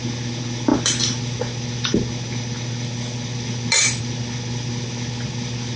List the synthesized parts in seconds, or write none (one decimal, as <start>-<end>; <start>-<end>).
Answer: none